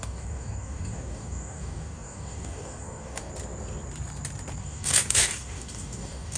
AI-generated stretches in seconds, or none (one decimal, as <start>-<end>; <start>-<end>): 0.0-3.3; 4.6-6.4